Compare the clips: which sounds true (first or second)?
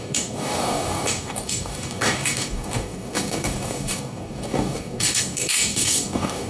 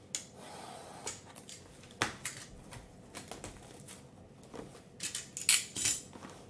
second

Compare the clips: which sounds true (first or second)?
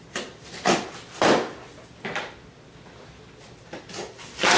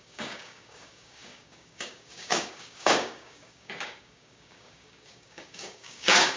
first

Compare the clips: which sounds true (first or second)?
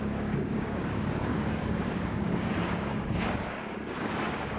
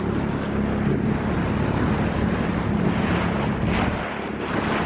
second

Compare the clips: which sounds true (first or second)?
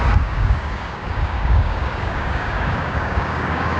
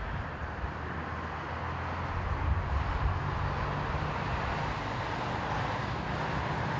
second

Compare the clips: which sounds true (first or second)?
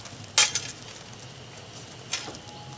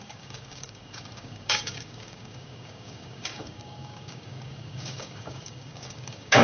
first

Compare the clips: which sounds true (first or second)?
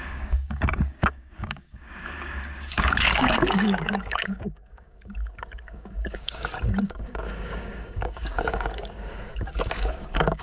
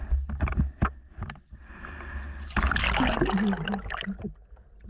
second